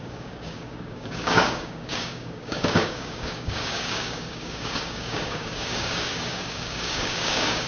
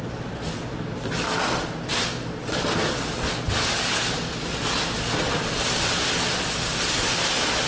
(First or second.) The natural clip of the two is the second